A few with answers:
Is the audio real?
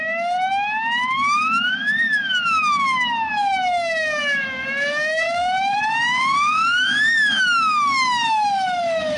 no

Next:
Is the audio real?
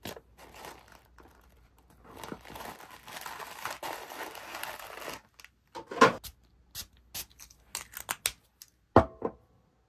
yes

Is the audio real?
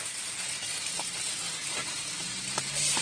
yes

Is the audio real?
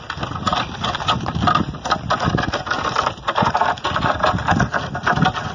yes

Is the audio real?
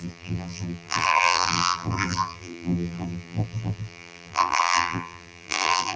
no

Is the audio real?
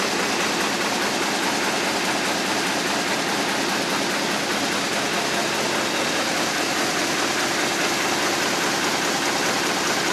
yes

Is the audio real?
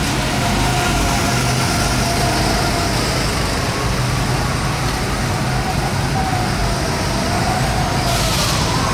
yes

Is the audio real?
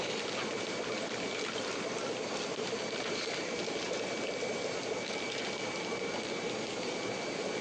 yes